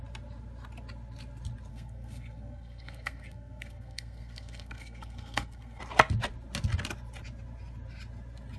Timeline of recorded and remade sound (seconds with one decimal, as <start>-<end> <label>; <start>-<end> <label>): 0.0-1.7 recorded; 1.7-5.8 remade; 5.8-8.6 recorded